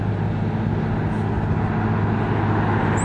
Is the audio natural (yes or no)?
yes